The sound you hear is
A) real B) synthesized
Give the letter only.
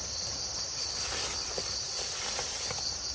A